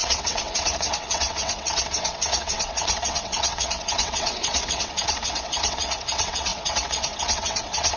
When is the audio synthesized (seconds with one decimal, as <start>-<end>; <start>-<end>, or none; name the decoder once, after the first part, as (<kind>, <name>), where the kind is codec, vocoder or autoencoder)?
0.0-8.0 (vocoder, WaveNeXt)